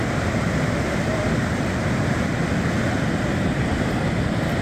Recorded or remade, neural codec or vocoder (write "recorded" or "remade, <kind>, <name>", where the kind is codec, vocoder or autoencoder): recorded